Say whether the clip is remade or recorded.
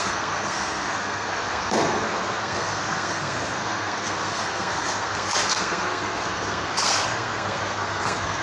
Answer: remade